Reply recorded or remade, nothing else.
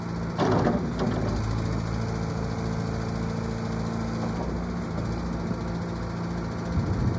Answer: recorded